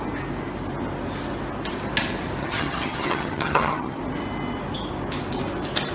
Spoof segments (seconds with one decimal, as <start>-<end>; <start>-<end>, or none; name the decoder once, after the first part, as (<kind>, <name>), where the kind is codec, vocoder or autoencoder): 2.4-4.0 (vocoder, HiFi-GAN)